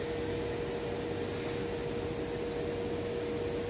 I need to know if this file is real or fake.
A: real